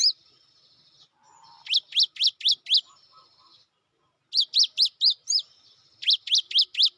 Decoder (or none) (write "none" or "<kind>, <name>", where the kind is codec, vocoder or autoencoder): none